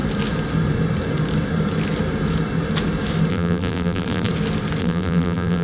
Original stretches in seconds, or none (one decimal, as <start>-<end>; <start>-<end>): 0.0-3.3; 4.3-4.8